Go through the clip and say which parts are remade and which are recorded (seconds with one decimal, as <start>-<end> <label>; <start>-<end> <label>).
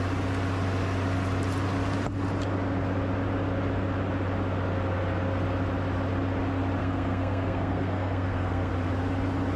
0.0-6.8 recorded; 6.8-8.7 remade; 8.7-9.6 recorded